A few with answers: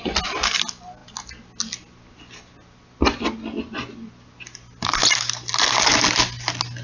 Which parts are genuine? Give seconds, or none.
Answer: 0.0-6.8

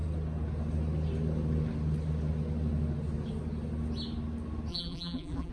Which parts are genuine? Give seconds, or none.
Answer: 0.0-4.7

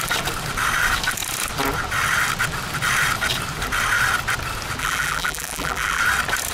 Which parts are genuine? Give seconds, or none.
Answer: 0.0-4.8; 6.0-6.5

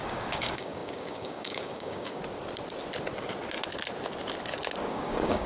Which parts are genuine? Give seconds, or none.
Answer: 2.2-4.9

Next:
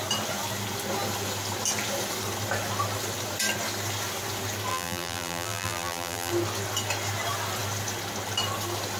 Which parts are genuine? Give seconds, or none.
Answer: 0.0-4.7; 6.3-9.0

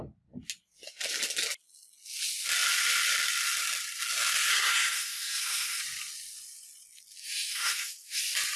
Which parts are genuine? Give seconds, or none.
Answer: 0.0-4.5; 5.8-7.2; 8.2-8.6

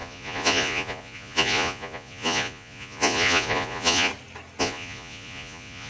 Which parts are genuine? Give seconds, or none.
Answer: 4.1-4.6

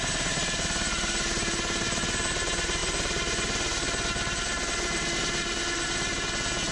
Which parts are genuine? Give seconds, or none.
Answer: 0.0-6.7